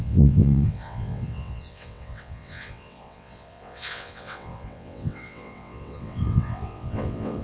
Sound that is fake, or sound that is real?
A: fake